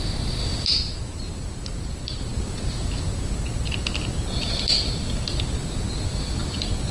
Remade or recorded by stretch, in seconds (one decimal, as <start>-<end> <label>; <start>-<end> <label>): 0.0-6.9 recorded